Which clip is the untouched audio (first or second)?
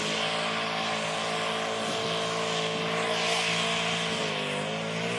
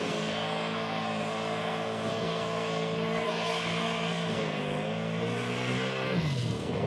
first